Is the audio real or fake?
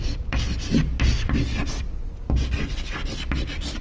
real